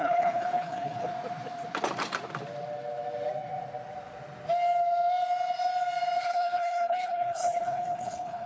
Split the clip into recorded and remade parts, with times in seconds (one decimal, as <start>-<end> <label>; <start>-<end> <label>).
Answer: 0.0-1.1 remade; 1.1-6.2 recorded; 6.2-8.5 remade